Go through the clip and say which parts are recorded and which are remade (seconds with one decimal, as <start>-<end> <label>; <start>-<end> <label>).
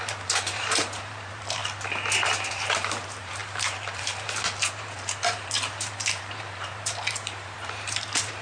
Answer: 0.0-1.6 remade; 1.6-2.5 recorded; 2.5-8.4 remade